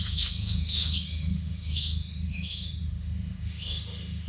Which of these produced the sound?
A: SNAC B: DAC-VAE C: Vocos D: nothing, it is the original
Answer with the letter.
B